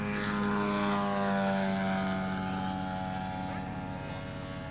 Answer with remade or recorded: recorded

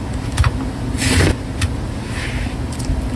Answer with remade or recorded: recorded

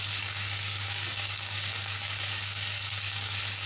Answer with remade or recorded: remade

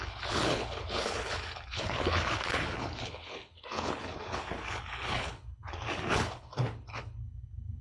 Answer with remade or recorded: remade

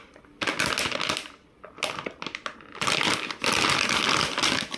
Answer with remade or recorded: recorded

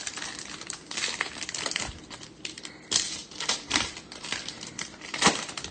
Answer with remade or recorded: remade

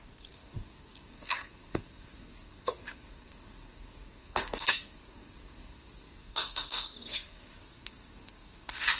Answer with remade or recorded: remade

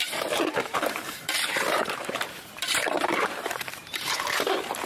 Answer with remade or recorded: remade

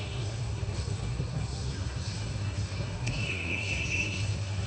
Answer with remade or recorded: remade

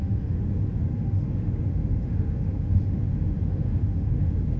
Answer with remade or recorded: remade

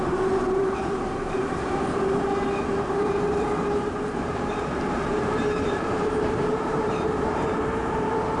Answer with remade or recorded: remade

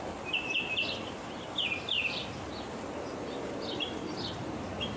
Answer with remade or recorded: recorded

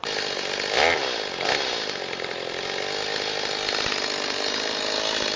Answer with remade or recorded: recorded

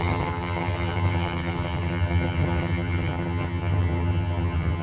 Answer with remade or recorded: remade